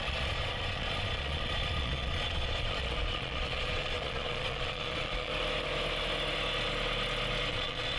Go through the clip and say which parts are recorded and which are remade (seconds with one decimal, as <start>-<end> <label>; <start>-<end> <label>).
0.0-5.3 remade; 5.3-7.5 recorded; 7.5-8.0 remade